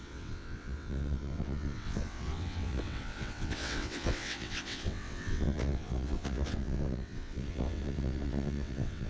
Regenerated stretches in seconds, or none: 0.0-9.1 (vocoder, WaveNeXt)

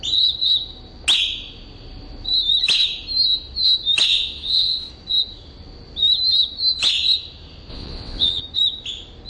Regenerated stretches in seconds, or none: 4.1-4.9 (vocoder, WaveNeXt); 7.7-8.4

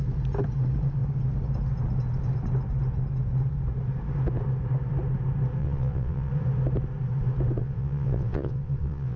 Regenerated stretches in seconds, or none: 5.6-6.3 (vocoder, WaveNeXt); 7.6-9.2

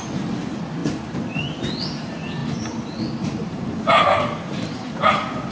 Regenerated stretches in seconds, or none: none

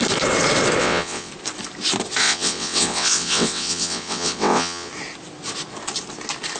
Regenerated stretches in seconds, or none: 0.8-1.3 (vocoder, WaveNeXt); 2.2-4.9

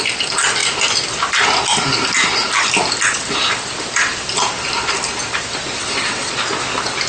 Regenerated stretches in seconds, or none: 5.8-6.3 (vocoder, WaveNeXt)

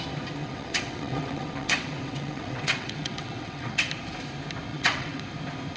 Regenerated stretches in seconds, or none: 0.4-3.9 (vocoder, WaveNeXt); 4.7-5.2